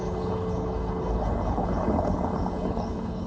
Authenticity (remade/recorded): remade